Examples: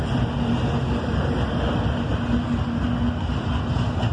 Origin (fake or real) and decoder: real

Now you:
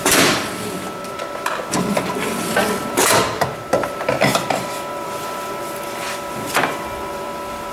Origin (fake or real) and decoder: fake, vocoder, BigVGAN v2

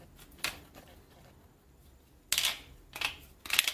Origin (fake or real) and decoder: real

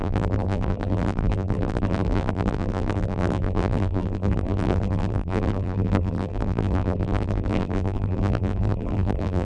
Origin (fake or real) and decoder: fake, vocoder, BigVGAN v2